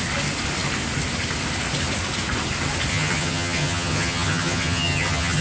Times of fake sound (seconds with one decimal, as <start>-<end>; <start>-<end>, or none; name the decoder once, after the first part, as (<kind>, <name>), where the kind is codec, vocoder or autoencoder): 2.9-5.4 (vocoder, HiFi-GAN)